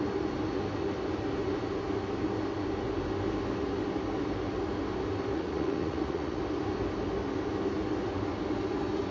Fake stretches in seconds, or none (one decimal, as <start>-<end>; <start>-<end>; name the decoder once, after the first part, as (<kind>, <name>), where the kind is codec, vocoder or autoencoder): 5.3-6.4 (vocoder, Vocos)